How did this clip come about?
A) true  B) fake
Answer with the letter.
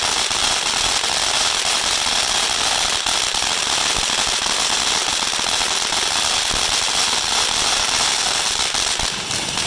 A